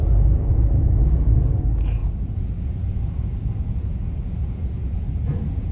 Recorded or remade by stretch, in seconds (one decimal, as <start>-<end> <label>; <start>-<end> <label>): 0.0-1.6 remade; 1.6-2.0 recorded; 2.0-5.7 remade